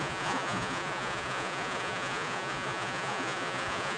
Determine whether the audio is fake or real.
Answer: fake